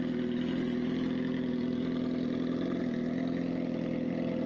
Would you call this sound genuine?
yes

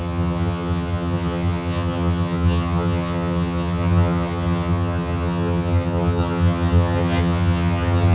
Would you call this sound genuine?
no